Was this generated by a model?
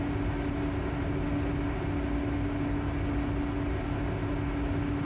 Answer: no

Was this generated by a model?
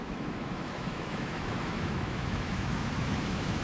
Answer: yes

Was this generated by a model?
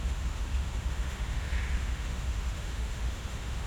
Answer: yes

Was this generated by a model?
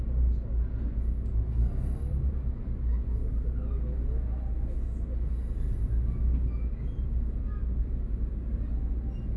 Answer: no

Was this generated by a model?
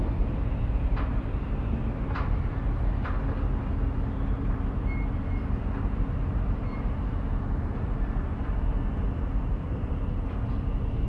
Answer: no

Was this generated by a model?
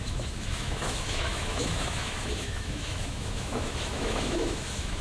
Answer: yes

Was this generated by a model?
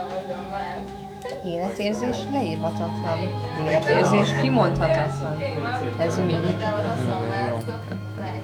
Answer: yes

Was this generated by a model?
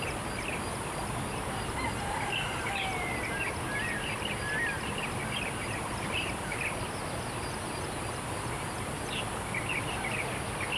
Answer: no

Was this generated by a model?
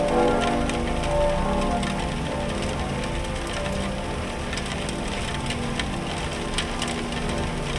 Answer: no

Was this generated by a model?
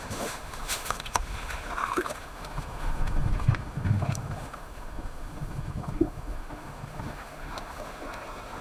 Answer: yes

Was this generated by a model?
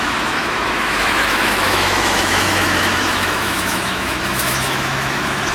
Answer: yes